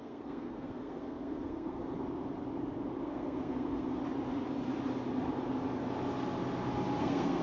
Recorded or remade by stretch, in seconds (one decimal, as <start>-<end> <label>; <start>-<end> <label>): 0.0-1.8 remade; 1.8-3.0 recorded; 3.0-4.0 remade; 4.0-7.0 recorded; 7.0-7.4 remade